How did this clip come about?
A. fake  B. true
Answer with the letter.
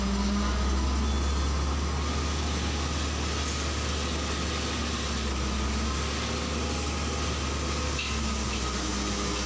B